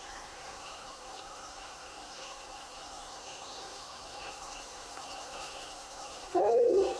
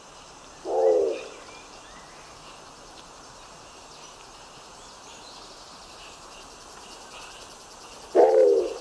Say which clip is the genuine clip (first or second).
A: second